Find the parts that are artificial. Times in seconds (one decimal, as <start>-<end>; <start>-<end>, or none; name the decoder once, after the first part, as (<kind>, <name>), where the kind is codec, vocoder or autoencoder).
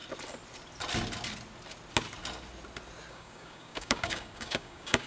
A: 3.1-5.1 (codec, DAC)